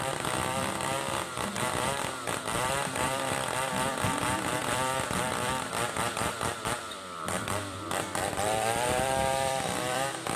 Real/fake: fake